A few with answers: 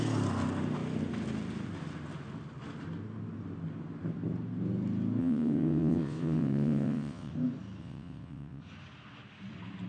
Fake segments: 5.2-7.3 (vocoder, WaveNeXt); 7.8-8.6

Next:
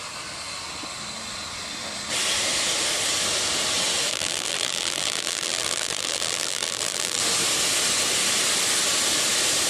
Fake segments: 4.1-7.2 (vocoder, BigVGAN v2)